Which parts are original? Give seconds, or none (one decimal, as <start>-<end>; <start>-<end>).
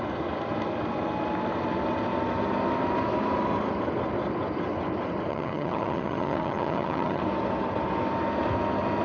0.0-5.3; 7.2-9.0